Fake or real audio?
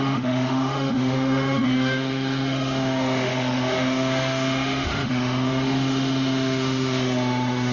fake